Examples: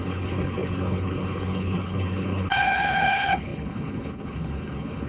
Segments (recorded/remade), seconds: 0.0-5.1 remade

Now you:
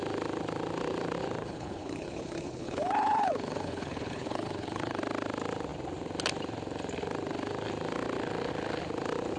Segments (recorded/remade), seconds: 0.0-1.4 recorded; 1.4-5.0 remade; 5.0-9.4 recorded

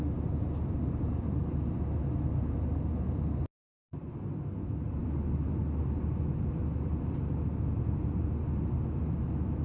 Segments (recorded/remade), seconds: 0.0-9.6 recorded

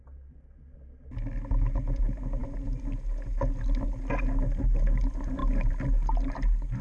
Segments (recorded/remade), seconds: 0.0-6.8 recorded

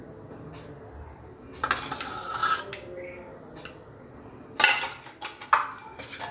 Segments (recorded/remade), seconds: 0.0-6.3 recorded

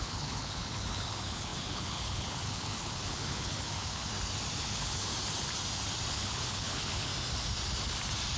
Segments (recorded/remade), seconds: 0.0-4.1 remade; 4.1-4.6 recorded; 4.6-5.1 remade; 5.1-6.1 recorded; 6.1-7.1 remade; 7.1-8.4 recorded

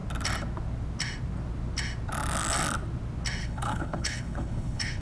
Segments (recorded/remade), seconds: 0.0-3.4 recorded; 3.4-5.0 remade